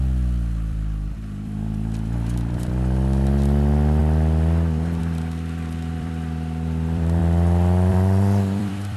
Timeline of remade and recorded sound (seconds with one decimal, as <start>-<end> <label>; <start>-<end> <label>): 0.0-4.0 remade; 4.0-5.0 recorded; 5.0-7.2 remade; 7.2-7.9 recorded; 7.9-9.0 remade